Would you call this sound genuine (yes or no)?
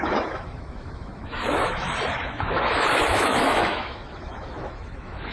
no